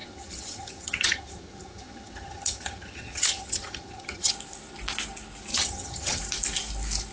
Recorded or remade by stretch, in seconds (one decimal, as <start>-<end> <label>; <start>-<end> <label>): 0.0-4.3 remade; 4.3-5.5 recorded; 5.5-6.2 remade; 6.2-7.1 recorded